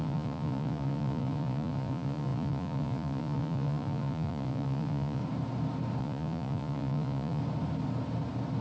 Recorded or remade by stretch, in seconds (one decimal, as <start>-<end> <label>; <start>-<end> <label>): 0.0-5.2 remade; 5.2-6.0 recorded; 6.0-7.4 remade; 7.4-8.6 recorded